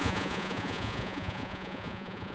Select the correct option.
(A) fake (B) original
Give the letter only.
A